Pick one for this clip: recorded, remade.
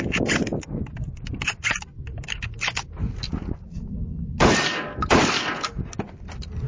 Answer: recorded